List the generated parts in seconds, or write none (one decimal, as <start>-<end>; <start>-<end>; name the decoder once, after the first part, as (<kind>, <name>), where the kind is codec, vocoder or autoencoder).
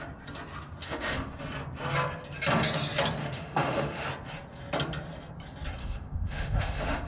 0.8-1.3 (autoencoder, DAC-VAE); 3.2-4.1; 5.8-7.1